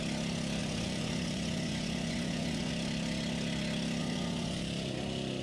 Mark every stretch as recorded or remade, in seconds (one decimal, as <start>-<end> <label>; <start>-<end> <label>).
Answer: 0.0-0.6 recorded; 0.6-2.7 remade; 2.7-4.0 recorded; 4.0-4.6 remade; 4.6-5.4 recorded